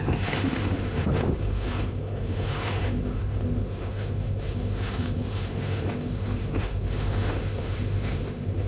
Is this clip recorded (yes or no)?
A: no